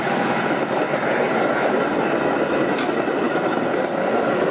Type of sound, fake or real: real